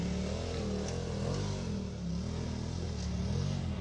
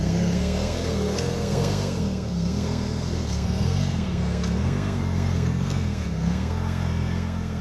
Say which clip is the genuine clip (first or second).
first